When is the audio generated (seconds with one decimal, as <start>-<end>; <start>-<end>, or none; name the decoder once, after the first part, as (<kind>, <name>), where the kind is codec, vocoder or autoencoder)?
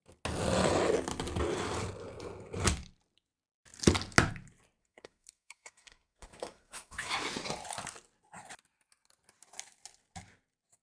4.8-7.1 (codec, SNAC)